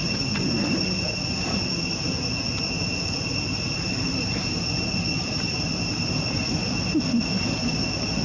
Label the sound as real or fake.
real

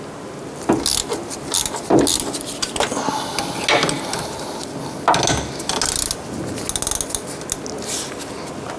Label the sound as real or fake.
real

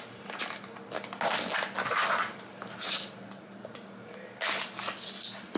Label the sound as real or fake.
real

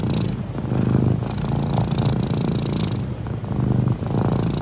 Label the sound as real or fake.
real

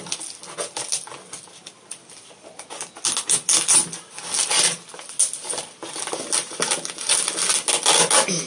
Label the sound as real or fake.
real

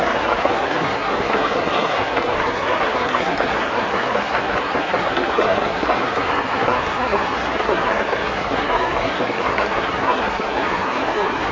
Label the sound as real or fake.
fake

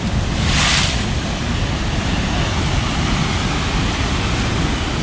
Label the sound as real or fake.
real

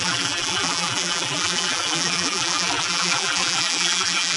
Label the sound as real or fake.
fake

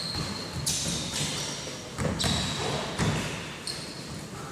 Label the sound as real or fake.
real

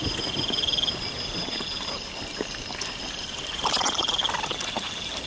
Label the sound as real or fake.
real